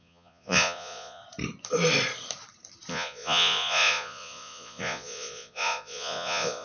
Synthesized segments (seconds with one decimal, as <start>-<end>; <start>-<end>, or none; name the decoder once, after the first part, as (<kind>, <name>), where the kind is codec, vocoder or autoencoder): 0.0-1.2 (vocoder, Vocos); 2.9-6.6